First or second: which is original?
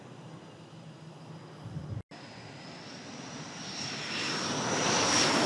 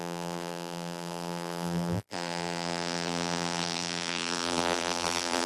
first